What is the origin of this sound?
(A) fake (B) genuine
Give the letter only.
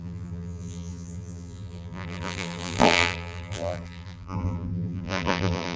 A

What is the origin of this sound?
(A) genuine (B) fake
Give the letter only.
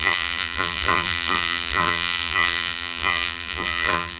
B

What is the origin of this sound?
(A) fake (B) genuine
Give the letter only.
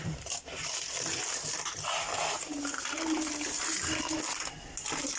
A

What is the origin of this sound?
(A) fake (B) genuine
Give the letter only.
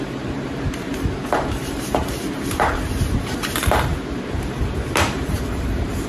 A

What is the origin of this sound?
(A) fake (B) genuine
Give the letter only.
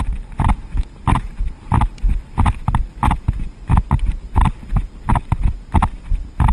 A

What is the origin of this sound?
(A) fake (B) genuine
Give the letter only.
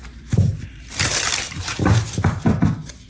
A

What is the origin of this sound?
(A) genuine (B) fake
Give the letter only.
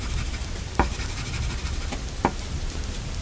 B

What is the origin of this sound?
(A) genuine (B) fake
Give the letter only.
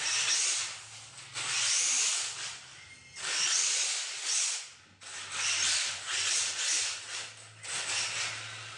A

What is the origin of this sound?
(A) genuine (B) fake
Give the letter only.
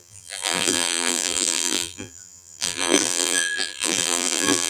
B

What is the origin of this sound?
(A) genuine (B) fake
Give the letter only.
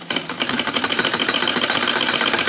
B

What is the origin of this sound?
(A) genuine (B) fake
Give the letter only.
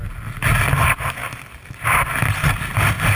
A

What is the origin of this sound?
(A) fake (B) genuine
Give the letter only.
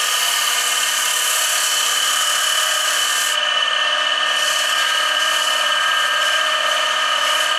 A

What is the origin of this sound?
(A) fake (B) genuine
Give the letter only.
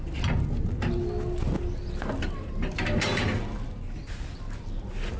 B